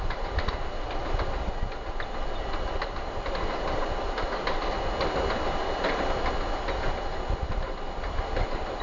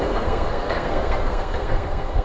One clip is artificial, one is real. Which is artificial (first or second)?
second